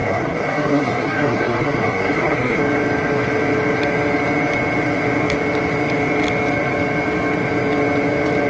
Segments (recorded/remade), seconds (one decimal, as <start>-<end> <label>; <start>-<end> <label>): 0.0-2.6 remade; 2.6-8.5 recorded